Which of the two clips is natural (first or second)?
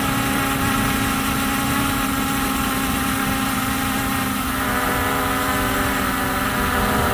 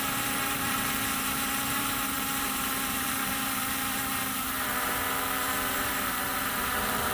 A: first